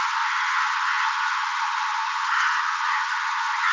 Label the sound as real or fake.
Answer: fake